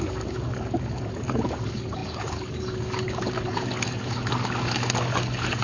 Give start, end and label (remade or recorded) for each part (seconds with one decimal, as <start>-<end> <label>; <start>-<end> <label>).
0.0-5.6 remade